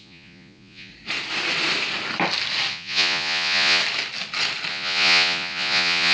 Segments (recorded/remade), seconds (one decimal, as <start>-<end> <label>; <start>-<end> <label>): 0.0-0.9 remade; 0.9-2.7 recorded; 2.7-3.8 remade; 3.8-4.7 recorded; 4.7-6.1 remade